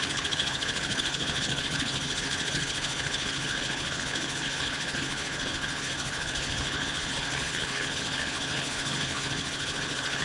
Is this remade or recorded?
remade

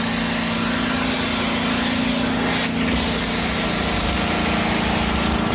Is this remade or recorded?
recorded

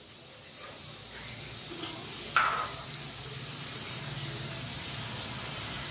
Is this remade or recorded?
recorded